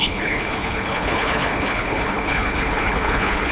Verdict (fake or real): fake